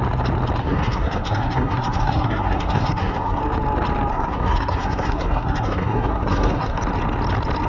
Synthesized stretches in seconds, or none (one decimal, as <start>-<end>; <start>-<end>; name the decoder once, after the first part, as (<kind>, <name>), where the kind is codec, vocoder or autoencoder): 0.6-3.4 (codec, SNAC); 4.1-6.8